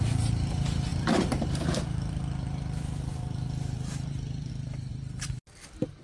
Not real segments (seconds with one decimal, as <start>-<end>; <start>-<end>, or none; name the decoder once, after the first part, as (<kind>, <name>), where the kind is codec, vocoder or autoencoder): 0.9-4.5 (vocoder, BigVGAN v2); 4.9-5.4